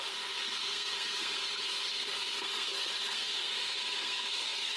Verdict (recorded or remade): remade